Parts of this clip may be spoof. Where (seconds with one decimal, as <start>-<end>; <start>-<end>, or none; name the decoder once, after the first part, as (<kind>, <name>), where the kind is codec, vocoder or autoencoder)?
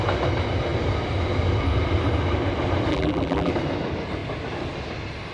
2.9-3.5 (vocoder, BigVGAN v2)